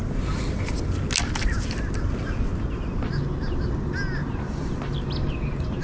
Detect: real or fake real